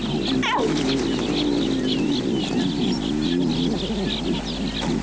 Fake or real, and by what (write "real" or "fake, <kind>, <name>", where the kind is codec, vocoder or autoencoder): real